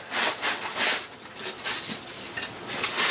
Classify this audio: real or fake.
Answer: real